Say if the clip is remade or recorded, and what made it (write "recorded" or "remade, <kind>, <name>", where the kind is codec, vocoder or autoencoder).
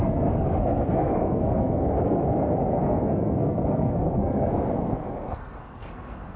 remade, codec, SNAC